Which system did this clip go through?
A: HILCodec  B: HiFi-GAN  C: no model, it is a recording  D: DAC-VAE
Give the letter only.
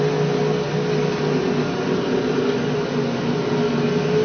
C